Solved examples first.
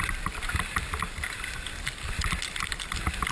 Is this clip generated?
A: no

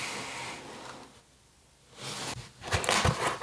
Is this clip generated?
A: no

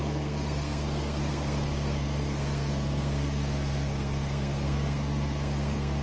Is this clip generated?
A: yes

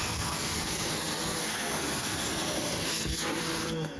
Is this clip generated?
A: yes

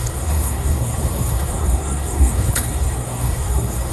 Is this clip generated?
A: yes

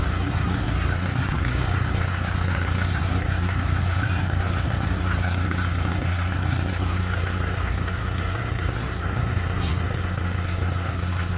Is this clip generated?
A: yes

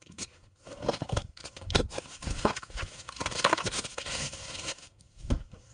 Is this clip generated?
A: yes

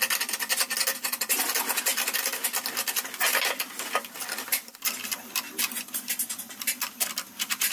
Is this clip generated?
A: no